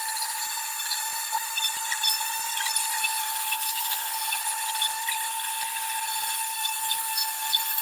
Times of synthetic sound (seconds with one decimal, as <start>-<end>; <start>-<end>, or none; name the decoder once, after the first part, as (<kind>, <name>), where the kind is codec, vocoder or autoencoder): 3.2-4.4 (codec, SNAC); 5.3-7.8